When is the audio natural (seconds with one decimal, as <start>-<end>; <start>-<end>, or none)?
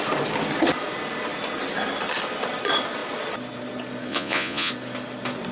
0.0-4.1; 4.7-5.5